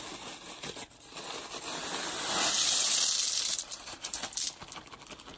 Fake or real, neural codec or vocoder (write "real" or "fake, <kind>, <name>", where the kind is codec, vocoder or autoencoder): real